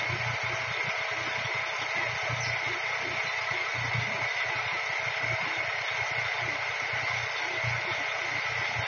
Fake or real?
real